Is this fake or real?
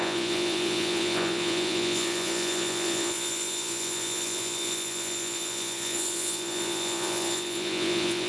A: fake